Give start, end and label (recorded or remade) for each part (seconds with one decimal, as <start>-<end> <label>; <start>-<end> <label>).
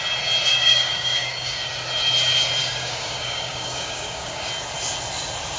0.0-0.5 recorded; 0.5-1.7 remade; 1.7-2.6 recorded; 2.6-4.5 remade; 4.5-5.6 recorded